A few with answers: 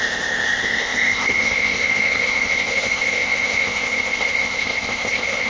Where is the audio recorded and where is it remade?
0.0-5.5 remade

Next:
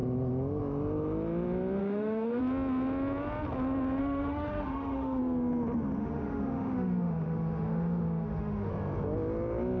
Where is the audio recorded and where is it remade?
0.0-1.8 recorded; 1.8-2.4 remade; 2.4-4.0 recorded; 4.0-5.2 remade; 5.2-6.0 recorded; 6.0-8.7 remade; 8.7-9.8 recorded